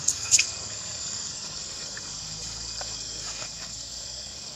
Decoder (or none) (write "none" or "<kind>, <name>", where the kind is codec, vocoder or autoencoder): codec, SNAC